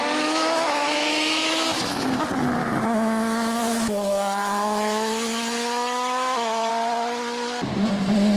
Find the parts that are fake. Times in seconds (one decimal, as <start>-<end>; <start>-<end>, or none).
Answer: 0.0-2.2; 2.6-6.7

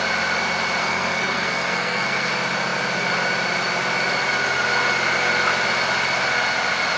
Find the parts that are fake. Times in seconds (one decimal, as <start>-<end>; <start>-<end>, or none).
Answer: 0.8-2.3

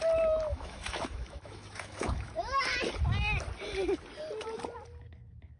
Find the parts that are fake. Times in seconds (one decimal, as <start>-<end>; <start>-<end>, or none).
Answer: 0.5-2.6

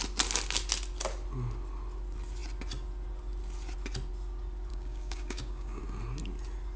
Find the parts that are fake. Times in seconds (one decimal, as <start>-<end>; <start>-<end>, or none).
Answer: 4.7-5.8